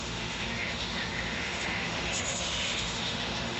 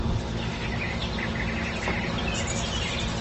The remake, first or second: first